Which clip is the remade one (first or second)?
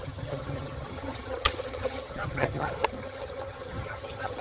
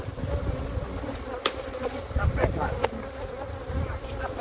first